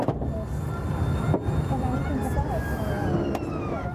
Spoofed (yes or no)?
no